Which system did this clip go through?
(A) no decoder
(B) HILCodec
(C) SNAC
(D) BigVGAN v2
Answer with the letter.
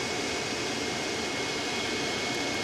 A